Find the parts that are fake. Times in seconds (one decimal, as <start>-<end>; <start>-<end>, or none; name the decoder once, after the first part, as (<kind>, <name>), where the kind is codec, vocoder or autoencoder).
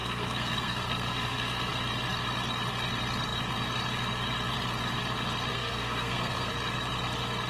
0.0-1.7 (codec, SNAC); 5.5-6.5